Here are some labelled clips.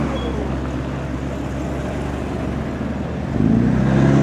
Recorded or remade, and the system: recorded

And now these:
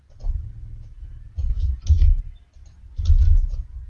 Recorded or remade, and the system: recorded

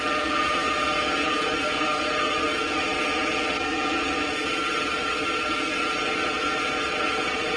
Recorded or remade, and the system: remade, vocoder, Vocos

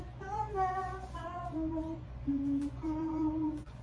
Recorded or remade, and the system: remade, vocoder, Vocos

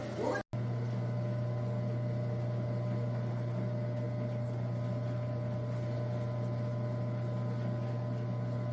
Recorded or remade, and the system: recorded